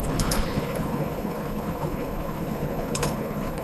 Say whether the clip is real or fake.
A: fake